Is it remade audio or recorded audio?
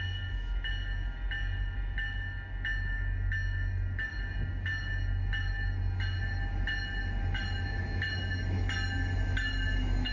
recorded